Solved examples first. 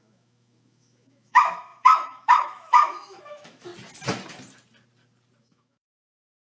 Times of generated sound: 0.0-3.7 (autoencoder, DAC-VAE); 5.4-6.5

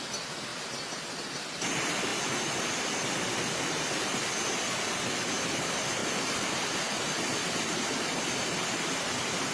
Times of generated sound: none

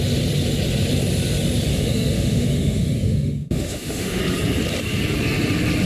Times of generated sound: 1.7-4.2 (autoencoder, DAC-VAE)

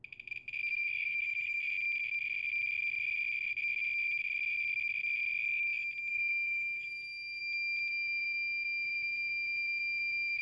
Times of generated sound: 0.7-1.6 (autoencoder, DAC-VAE); 6.1-7.4; 7.9-10.4

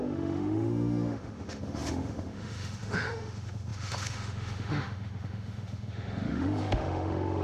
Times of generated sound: 0.0-7.4 (autoencoder, DAC-VAE)

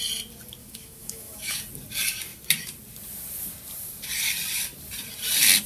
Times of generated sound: 0.6-1.6 (autoencoder, DAC-VAE)